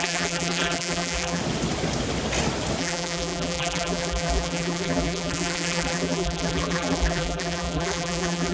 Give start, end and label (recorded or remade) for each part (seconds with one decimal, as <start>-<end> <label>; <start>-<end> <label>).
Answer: 0.0-1.4 remade; 1.4-2.8 recorded; 2.8-8.5 remade